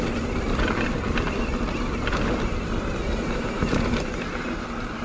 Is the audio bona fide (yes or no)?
yes